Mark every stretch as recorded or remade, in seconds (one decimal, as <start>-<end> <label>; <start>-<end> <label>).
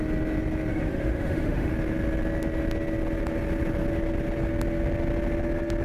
0.0-0.7 recorded; 0.7-1.7 remade; 1.7-5.8 recorded